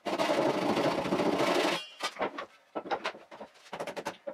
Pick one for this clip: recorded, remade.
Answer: recorded